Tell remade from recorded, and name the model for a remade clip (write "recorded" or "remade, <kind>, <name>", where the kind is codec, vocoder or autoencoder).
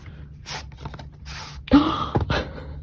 recorded